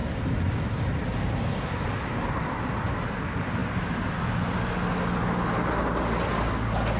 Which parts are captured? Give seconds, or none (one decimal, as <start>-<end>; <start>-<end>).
0.0-7.0